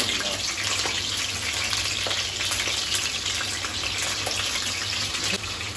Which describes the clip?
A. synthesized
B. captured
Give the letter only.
B